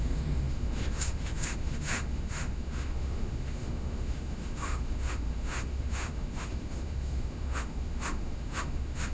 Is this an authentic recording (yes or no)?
no